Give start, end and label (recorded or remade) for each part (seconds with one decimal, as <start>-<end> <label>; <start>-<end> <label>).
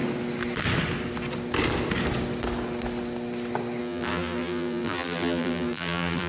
0.0-3.8 recorded; 3.8-6.3 remade